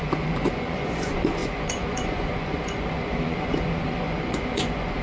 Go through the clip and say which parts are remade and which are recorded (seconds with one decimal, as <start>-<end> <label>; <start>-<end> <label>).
0.0-5.0 remade